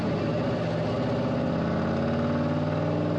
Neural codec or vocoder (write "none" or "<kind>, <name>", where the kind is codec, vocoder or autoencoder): none